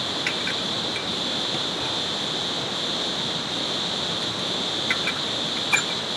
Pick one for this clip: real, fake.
real